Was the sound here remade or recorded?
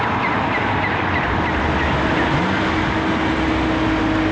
recorded